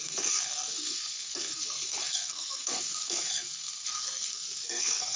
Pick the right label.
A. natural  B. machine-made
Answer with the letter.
B